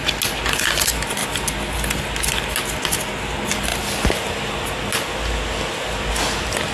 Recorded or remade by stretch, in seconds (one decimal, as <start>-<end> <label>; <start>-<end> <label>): 0.0-6.7 recorded